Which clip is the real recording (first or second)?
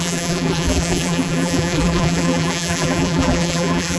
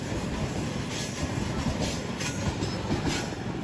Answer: second